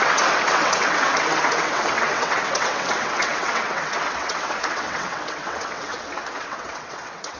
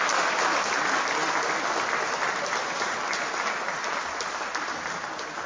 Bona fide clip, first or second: second